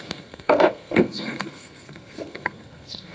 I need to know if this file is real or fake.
fake